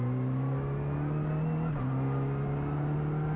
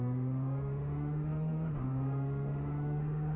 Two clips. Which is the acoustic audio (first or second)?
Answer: first